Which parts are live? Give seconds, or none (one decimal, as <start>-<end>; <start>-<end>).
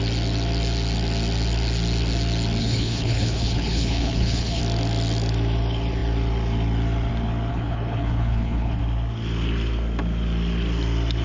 0.0-2.6; 4.6-7.5; 8.8-11.2